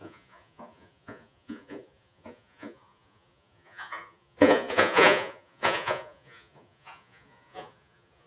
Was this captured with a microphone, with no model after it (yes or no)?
no